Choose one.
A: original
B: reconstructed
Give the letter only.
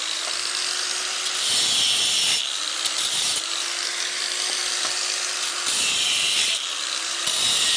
A